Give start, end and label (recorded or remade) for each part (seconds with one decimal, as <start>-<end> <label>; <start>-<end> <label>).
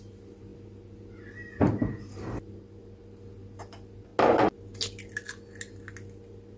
0.0-6.6 recorded